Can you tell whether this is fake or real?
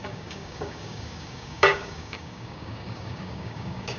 fake